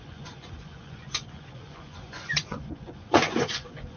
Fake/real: fake